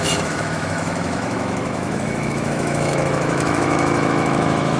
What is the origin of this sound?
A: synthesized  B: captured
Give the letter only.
A